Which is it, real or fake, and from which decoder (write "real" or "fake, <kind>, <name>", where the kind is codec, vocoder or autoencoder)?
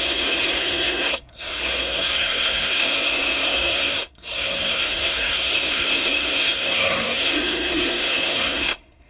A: fake, codec, SNAC